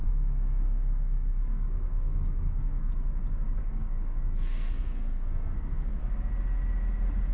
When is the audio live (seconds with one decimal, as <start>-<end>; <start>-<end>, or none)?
2.9-3.6; 6.0-7.3